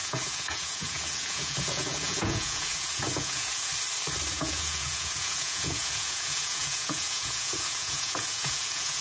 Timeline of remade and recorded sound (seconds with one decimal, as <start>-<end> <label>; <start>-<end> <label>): 0.0-3.7 remade; 3.7-4.3 recorded; 4.3-9.0 remade